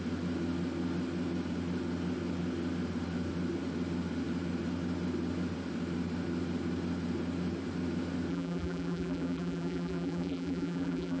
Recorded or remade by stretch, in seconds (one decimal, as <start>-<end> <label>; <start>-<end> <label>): 0.0-8.3 recorded; 8.3-11.2 remade